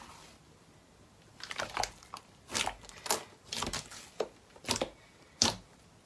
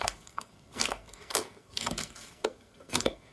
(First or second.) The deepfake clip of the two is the second